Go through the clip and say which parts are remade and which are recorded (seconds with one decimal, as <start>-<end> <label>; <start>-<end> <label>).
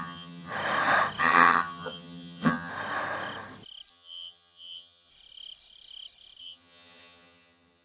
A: 0.0-0.5 remade; 0.5-1.2 recorded; 1.2-2.7 remade; 2.7-3.9 recorded; 3.9-5.1 remade; 5.1-6.4 recorded; 6.4-7.8 remade